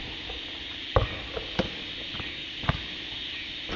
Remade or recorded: recorded